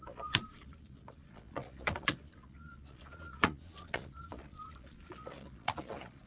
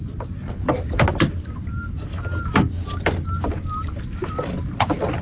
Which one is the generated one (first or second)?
first